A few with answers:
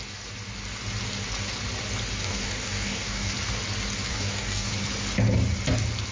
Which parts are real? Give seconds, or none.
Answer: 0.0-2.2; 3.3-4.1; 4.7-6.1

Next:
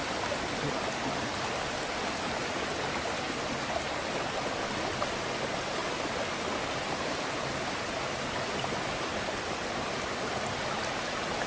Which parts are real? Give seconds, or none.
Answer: 0.0-11.5

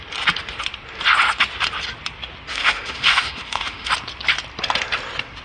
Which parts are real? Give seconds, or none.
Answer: 0.0-2.5; 3.9-5.4

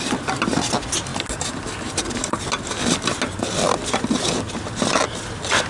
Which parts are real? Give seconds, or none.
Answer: 0.0-5.7

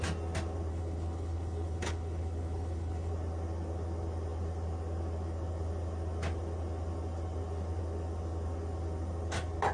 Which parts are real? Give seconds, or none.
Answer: 0.0-0.7; 3.1-9.7

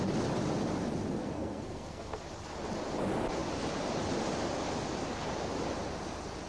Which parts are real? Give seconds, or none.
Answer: 0.0-1.2; 2.3-6.5

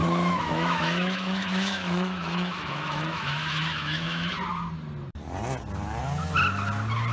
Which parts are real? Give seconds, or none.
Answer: 4.3-7.1

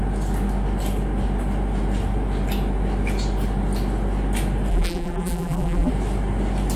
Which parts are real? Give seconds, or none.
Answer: 0.0-4.7; 5.9-6.8